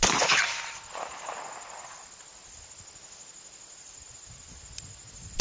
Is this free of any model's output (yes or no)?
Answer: yes